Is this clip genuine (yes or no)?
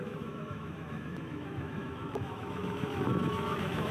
no